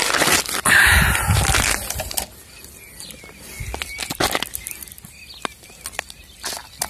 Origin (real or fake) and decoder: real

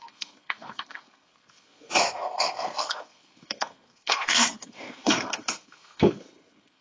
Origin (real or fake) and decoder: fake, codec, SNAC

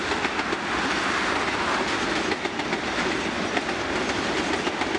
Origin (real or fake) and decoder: real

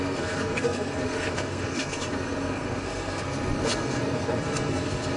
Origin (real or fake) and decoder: fake, codec, SNAC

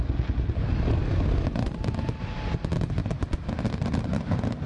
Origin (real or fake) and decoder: real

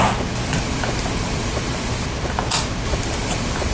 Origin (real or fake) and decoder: real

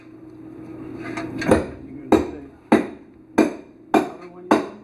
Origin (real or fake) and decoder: real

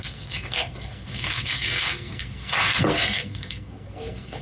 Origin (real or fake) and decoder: fake, codec, SNAC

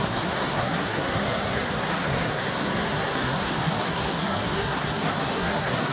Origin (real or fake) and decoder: fake, codec, SNAC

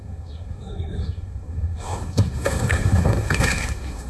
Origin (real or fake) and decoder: fake, codec, SNAC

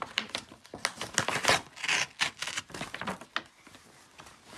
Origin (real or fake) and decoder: real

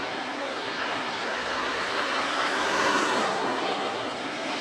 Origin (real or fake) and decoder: fake, codec, SNAC